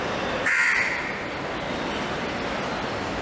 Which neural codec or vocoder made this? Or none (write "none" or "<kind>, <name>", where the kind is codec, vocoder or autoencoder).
none